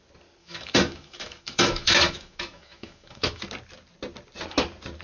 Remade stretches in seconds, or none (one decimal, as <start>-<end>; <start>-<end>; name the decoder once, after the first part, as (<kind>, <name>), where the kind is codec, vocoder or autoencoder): 0.4-3.4 (autoencoder, DAC-VAE)